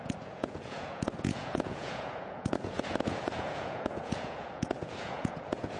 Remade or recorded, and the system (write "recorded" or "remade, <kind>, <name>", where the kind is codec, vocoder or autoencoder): remade, vocoder, Vocos